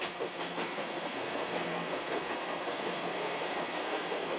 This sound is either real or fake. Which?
fake